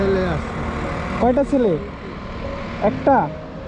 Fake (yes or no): no